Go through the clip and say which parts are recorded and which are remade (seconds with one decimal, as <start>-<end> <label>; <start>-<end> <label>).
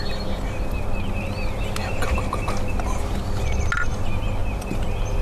0.0-5.2 recorded